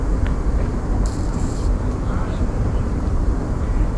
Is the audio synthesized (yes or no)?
yes